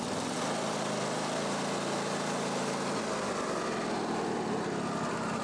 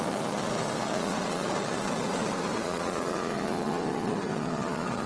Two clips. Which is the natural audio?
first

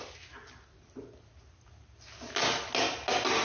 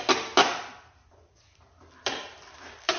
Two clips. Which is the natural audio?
first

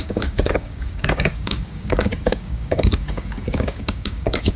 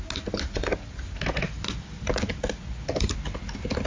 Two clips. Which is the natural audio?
second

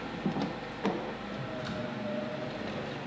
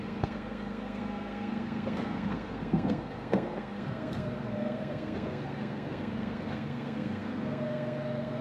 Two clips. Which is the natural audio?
first